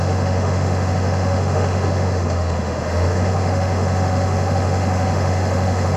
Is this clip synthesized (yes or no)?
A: yes